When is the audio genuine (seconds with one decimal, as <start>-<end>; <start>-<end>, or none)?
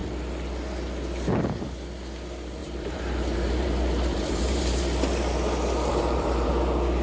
0.0-2.6; 4.8-5.9; 6.5-7.0